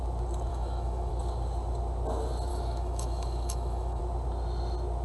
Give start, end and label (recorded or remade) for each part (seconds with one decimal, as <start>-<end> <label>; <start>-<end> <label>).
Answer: 0.0-0.5 recorded; 0.5-1.1 remade; 1.1-2.5 recorded; 2.5-4.0 remade; 4.0-5.0 recorded